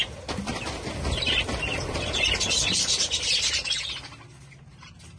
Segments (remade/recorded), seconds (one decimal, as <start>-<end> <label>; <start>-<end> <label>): 0.0-5.2 recorded